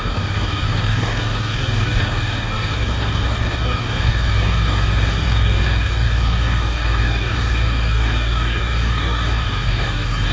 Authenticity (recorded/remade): remade